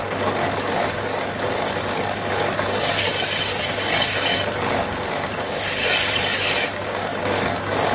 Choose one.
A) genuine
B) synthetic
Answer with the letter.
B